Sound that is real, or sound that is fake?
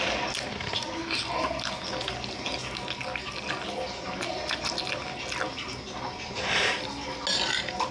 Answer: real